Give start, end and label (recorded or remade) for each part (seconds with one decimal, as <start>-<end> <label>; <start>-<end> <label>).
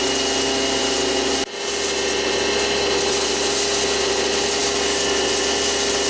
0.0-6.1 recorded